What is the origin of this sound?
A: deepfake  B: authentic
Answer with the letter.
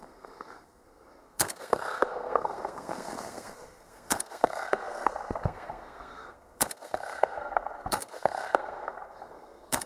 A